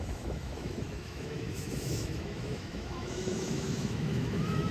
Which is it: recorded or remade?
remade